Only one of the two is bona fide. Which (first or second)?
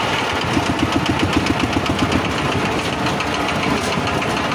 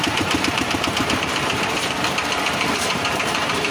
first